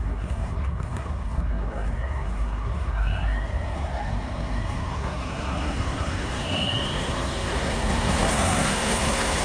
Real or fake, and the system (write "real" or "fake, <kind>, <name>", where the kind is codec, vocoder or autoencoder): fake, codec, SNAC